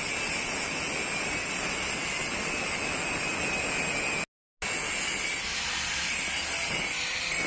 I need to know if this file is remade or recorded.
recorded